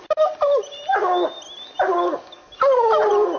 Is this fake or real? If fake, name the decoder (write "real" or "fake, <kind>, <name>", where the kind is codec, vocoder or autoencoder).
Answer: real